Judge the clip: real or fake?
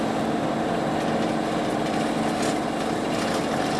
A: real